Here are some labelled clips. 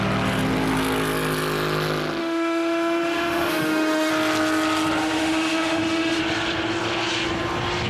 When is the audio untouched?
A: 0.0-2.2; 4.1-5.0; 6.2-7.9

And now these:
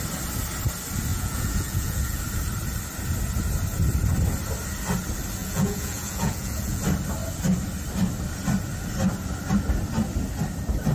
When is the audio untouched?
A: 0.0-1.1; 2.2-5.4; 6.8-10.9

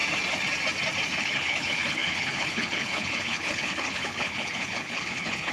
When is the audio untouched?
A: 0.0-1.2

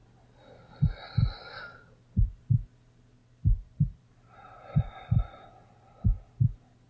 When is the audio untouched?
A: 0.0-6.9

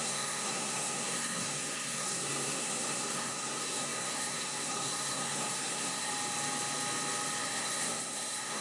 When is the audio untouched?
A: 6.1-7.4

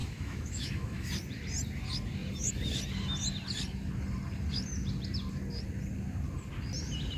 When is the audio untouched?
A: 1.1-7.2

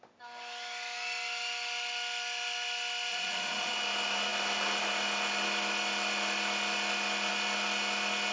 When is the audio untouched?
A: 0.0-3.1; 3.7-8.3